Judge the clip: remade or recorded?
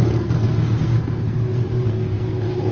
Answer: remade